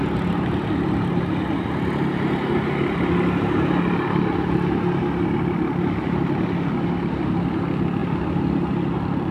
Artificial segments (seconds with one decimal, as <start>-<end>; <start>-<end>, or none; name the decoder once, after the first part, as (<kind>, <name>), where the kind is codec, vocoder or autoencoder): none